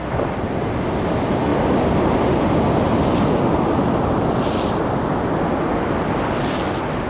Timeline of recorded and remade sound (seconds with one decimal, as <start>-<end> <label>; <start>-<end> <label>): 0.0-7.1 recorded